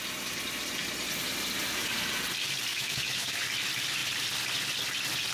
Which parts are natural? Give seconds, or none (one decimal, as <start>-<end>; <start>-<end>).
0.0-2.7; 3.4-5.3